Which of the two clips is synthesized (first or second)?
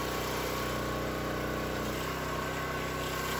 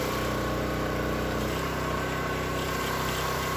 second